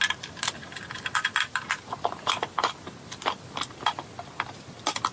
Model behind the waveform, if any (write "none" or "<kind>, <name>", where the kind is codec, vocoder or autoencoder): none